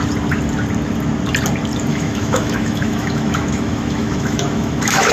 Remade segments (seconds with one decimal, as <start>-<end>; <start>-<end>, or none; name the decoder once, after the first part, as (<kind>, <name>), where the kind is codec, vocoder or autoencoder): 1.9-5.1 (autoencoder, DAC-VAE)

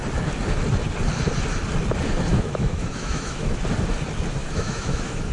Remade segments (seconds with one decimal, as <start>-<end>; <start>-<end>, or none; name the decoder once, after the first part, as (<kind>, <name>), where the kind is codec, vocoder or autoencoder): 2.3-3.6 (autoencoder, DAC-VAE); 4.4-5.3

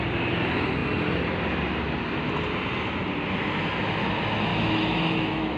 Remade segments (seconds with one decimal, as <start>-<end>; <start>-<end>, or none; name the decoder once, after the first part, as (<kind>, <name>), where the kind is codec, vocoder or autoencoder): 4.5-5.6 (autoencoder, DAC-VAE)

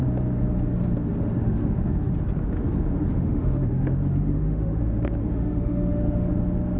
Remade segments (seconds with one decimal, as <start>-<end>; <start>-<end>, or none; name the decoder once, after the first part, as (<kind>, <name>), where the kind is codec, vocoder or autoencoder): 1.4-2.1 (autoencoder, DAC-VAE); 3.1-4.8; 5.2-6.3